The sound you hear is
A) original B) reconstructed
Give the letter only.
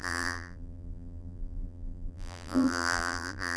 B